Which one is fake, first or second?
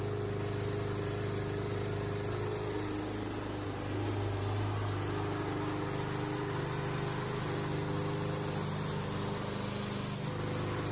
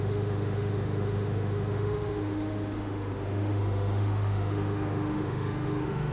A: second